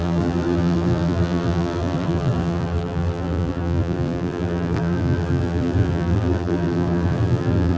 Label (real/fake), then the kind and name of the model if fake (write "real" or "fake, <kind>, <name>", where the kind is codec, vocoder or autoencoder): fake, vocoder, BigVGAN v2